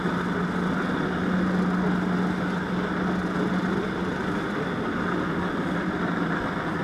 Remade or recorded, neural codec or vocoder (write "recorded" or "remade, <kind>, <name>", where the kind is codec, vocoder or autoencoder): recorded